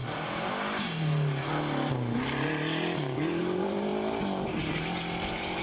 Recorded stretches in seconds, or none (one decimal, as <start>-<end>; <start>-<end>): 0.0-3.4; 3.9-4.6